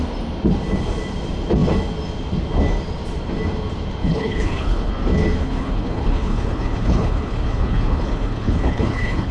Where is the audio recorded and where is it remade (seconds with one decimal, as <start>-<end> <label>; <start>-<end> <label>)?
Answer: 0.0-4.0 recorded; 4.0-4.9 remade; 4.9-5.4 recorded; 5.4-9.3 remade